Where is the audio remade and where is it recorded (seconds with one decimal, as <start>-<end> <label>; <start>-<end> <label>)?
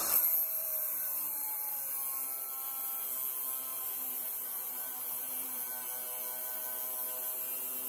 0.0-0.6 recorded; 0.6-1.7 remade; 1.7-3.7 recorded; 3.7-5.6 remade; 5.6-7.9 recorded